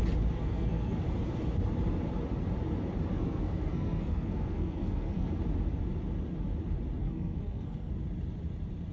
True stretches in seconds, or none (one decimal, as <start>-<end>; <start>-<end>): 0.0-0.4; 1.0-3.1; 5.3-7.0; 7.9-8.9